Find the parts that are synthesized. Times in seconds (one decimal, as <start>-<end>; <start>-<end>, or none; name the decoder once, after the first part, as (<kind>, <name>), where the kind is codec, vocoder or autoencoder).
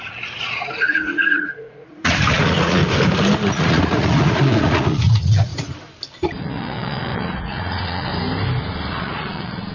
0.0-2.8 (vocoder, Vocos); 3.5-5.5; 6.4-8.1; 8.9-9.7